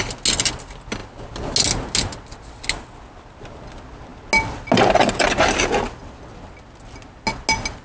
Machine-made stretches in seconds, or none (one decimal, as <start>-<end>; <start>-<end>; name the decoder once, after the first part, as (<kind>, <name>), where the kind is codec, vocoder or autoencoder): none